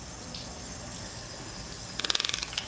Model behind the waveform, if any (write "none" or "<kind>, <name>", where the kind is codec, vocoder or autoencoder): none